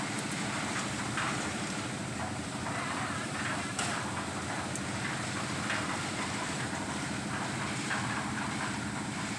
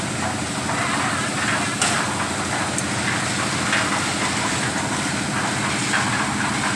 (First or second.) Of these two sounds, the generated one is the first